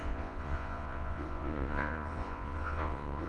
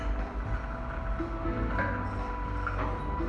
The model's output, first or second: first